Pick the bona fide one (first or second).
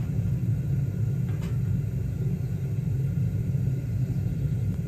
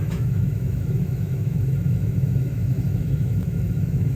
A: first